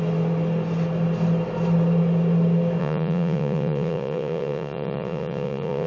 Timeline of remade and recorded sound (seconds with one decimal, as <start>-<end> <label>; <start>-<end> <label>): 0.0-2.8 recorded; 2.8-5.9 remade